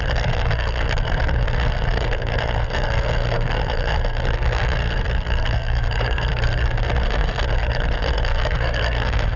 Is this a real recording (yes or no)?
no